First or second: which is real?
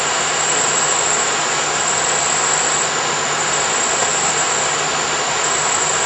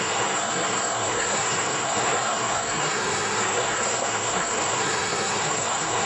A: first